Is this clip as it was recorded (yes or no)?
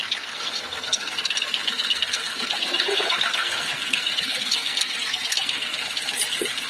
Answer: no